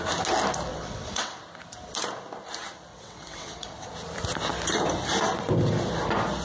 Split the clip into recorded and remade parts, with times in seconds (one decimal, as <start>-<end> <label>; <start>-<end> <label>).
0.0-0.7 recorded; 0.7-1.4 remade; 1.4-2.9 recorded; 2.9-3.9 remade; 3.9-6.4 recorded